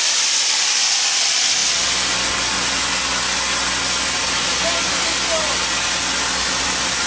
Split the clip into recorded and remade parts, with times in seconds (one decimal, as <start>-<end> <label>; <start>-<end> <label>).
0.0-1.6 remade; 1.6-4.9 recorded; 4.9-6.0 remade; 6.0-6.6 recorded; 6.6-7.1 remade